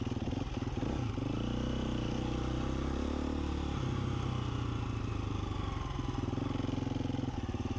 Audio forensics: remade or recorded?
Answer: recorded